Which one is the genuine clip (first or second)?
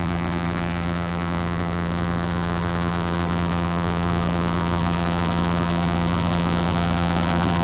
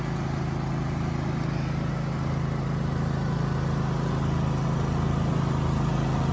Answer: second